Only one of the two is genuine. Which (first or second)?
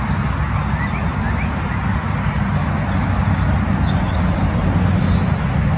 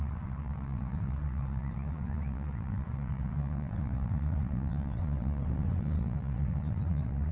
first